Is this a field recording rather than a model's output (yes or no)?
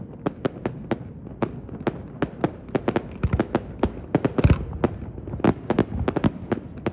yes